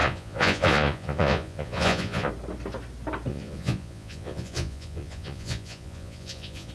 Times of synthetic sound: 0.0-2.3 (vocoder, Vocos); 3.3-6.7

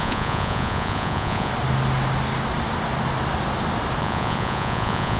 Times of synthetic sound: 0.0-1.5 (vocoder, Vocos); 4.0-5.2

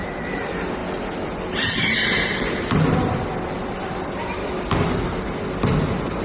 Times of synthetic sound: none

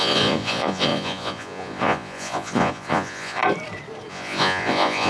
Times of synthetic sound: 0.0-3.4 (vocoder, Vocos); 4.1-5.1